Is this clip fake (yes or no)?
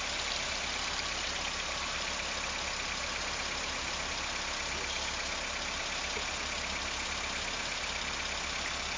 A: no